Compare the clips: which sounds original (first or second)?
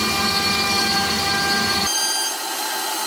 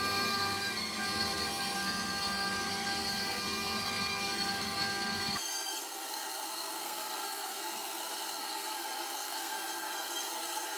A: first